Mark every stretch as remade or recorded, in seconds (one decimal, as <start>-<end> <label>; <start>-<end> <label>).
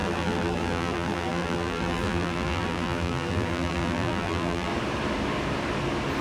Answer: 0.0-4.7 remade; 4.7-6.2 recorded